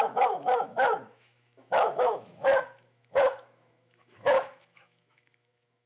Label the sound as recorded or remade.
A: remade